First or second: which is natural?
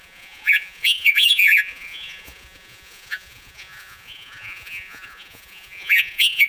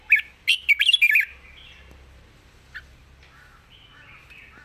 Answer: second